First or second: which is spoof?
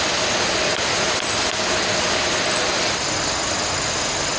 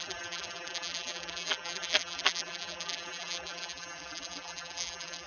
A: second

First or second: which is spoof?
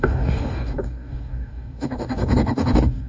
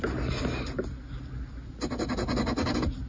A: first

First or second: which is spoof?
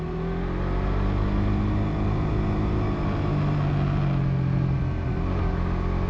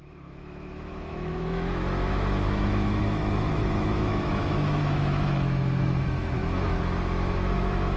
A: second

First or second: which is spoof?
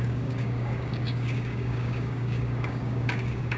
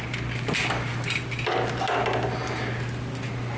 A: first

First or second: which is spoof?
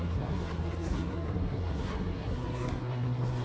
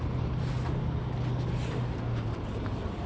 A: first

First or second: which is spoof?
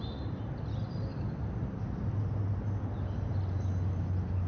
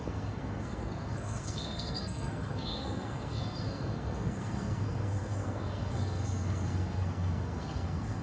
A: second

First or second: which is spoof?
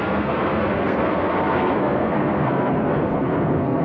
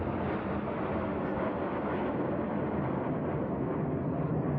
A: first